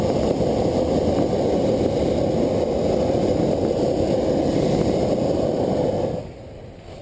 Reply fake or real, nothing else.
real